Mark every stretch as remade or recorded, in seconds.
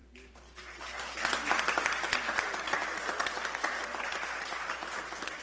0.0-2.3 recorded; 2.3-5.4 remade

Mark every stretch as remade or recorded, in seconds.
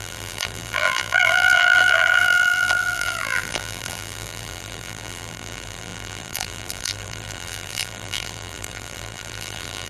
0.0-9.9 remade